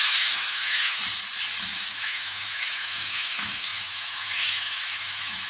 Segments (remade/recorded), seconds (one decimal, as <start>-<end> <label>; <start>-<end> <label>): 0.0-1.0 remade; 1.0-1.7 recorded; 1.7-5.5 remade